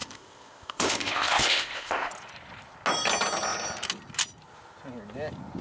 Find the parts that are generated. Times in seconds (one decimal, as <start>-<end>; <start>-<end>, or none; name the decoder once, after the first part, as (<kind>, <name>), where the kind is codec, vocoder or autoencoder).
0.0-2.1 (codec, ZipCodec)